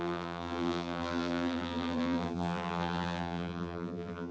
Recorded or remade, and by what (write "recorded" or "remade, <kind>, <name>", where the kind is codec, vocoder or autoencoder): remade, vocoder, BigVGAN v2